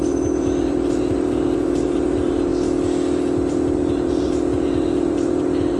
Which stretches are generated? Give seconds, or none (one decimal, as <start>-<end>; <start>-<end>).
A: 0.0-2.5; 3.5-5.8